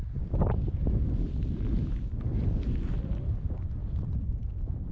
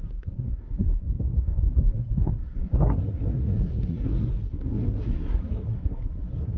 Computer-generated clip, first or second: second